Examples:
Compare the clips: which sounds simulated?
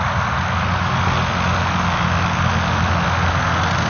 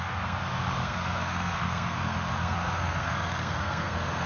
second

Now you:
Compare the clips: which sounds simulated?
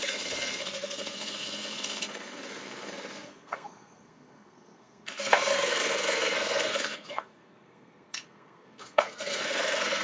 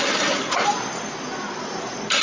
first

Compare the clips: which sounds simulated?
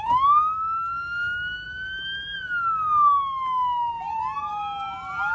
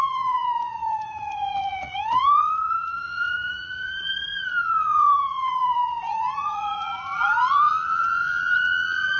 second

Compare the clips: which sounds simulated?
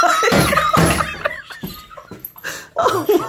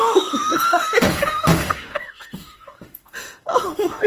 second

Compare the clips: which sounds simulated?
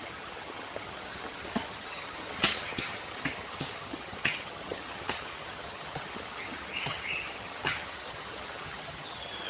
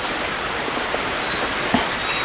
first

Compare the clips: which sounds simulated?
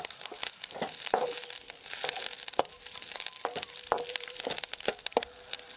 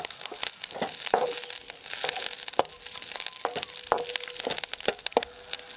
first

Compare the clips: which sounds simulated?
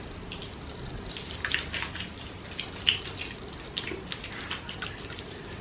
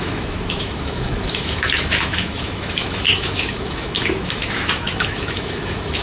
second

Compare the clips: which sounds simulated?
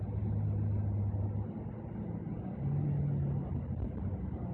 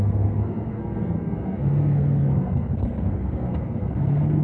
second